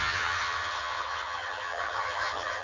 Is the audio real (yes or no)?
no